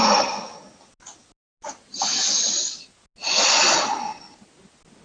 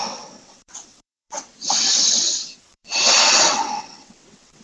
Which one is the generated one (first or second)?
second